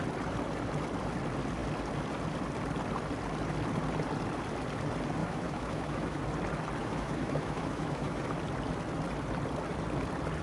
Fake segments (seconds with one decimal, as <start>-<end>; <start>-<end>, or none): 5.2-6.2; 6.8-8.2